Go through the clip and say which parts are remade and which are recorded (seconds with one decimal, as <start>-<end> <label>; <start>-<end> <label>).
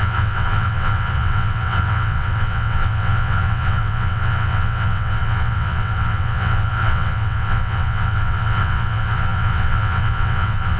0.0-10.8 remade